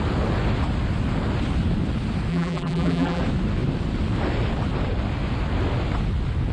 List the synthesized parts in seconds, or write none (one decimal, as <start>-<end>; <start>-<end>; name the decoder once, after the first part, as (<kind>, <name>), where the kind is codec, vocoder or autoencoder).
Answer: 2.3-3.2 (vocoder, BigVGAN v2)

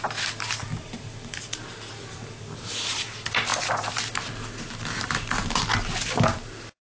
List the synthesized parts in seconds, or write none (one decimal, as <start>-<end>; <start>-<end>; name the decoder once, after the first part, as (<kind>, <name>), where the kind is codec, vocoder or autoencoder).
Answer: 0.6-2.7 (vocoder, BigVGAN v2)

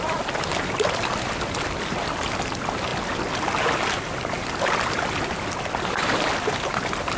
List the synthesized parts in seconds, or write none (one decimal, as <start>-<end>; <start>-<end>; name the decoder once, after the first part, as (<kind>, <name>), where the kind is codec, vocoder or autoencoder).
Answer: none

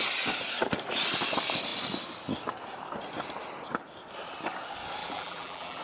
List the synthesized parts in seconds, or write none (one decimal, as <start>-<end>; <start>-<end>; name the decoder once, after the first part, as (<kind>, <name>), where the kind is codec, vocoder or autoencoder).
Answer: 5.0-5.8 (vocoder, BigVGAN v2)

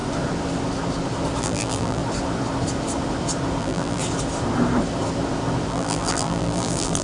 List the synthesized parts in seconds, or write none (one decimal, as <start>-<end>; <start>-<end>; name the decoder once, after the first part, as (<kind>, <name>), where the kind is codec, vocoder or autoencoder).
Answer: 1.4-2.0 (vocoder, BigVGAN v2); 3.6-4.0; 5.7-7.0

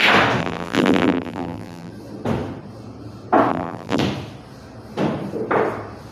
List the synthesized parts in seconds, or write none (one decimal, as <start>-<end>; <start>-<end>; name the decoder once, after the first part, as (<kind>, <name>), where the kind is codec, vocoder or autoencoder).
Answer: 0.4-1.9 (vocoder, BigVGAN v2); 3.5-4.0

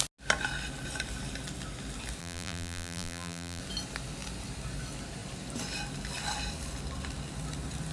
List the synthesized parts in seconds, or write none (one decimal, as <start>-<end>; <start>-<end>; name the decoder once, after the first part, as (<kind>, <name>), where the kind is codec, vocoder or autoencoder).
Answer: 2.2-3.6 (vocoder, BigVGAN v2)

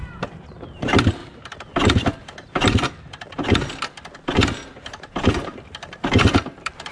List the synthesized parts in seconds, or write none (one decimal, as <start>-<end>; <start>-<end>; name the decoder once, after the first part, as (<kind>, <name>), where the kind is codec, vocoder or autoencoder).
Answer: 0.0-1.2 (vocoder, BigVGAN v2); 5.3-6.9